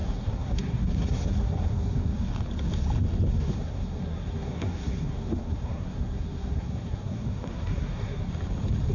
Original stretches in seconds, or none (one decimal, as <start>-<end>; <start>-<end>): 2.3-3.3; 8.3-8.9